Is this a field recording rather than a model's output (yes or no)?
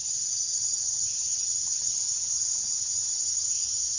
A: no